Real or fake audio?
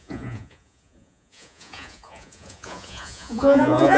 fake